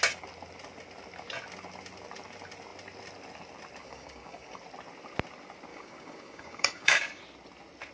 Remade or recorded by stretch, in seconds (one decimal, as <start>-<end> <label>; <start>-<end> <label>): 0.0-3.8 recorded; 3.8-4.6 remade; 4.6-5.7 recorded; 5.7-7.2 remade; 7.2-7.9 recorded